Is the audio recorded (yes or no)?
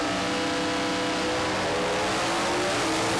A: yes